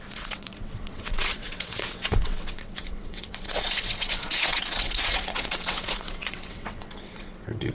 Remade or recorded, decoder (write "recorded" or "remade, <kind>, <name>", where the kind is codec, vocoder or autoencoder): remade, vocoder, WaveNeXt